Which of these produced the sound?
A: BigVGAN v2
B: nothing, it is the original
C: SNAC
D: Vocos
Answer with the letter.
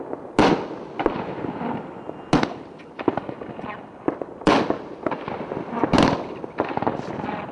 B